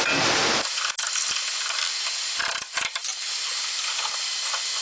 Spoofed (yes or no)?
no